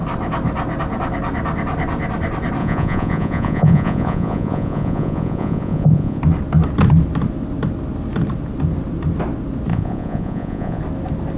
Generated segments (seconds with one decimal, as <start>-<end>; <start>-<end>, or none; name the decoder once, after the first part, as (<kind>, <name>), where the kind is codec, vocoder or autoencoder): 2.6-6.2 (vocoder, Vocos); 9.7-10.8